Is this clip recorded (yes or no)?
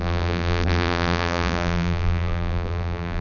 no